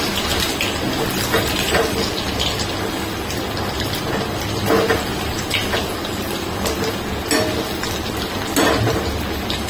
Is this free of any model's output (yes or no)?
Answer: yes